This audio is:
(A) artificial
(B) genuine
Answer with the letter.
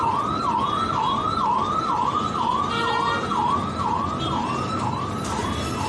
B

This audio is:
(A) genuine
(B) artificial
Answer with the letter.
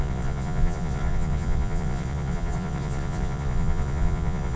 B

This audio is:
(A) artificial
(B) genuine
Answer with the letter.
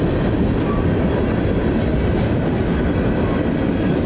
B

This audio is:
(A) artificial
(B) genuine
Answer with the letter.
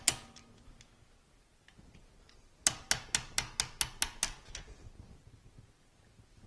B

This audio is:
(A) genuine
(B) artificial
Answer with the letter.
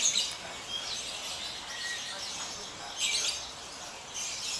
A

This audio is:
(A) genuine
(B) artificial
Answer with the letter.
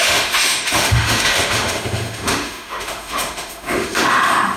B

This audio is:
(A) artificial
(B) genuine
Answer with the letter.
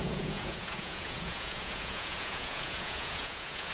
A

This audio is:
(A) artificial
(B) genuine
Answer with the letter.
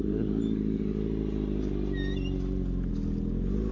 B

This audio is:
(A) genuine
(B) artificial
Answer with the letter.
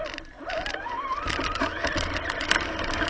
A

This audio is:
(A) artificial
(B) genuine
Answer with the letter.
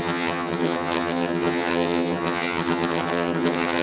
A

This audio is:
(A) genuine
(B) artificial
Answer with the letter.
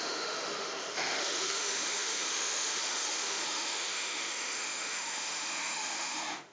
B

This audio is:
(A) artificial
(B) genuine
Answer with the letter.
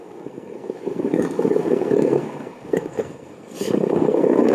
A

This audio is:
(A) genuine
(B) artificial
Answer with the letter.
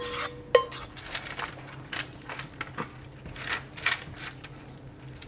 A